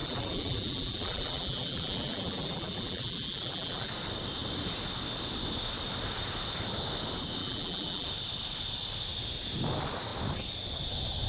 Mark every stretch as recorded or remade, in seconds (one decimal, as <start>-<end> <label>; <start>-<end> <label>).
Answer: 0.0-3.9 remade; 3.9-7.4 recorded; 7.4-8.1 remade; 8.1-11.3 recorded